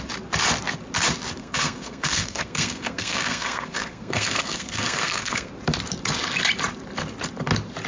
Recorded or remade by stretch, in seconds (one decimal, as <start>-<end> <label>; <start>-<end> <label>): 0.0-1.4 recorded; 1.4-5.5 remade; 5.5-7.9 recorded